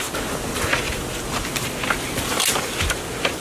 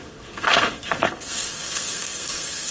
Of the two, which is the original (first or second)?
first